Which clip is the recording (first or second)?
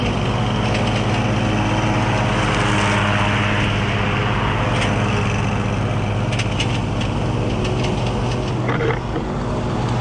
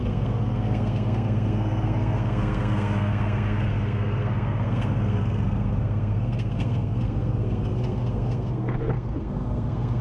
first